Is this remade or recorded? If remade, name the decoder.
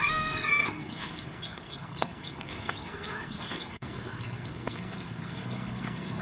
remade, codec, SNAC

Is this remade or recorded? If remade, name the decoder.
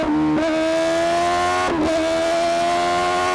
recorded